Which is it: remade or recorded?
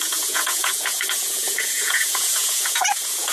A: remade